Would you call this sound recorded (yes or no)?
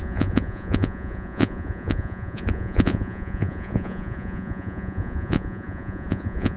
no